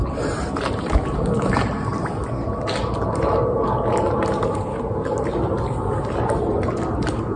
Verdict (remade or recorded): recorded